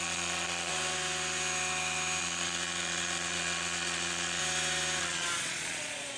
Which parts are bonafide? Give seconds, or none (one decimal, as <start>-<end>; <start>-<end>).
0.7-2.2; 4.4-5.0